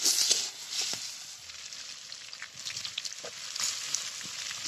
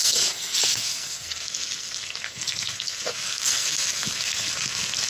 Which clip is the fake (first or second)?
second